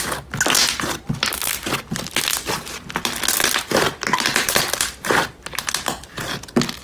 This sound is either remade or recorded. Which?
recorded